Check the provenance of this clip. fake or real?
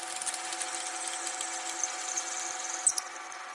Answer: real